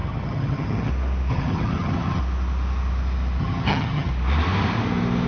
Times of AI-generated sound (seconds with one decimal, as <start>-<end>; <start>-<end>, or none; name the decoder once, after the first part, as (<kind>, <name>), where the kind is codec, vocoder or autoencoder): 0.0-0.9 (vocoder, HiFi-GAN); 1.3-2.2; 3.4-4.1